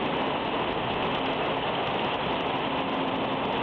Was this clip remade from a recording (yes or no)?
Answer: no